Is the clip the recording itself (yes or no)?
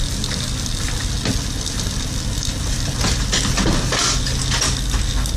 yes